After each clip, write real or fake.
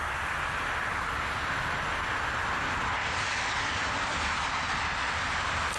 real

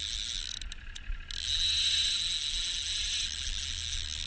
real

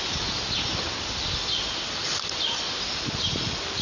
real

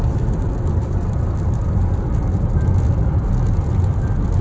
real